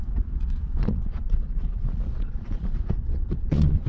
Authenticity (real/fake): fake